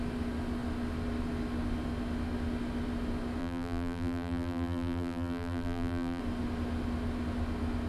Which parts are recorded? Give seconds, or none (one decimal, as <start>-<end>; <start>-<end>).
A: 0.0-3.4; 6.2-7.9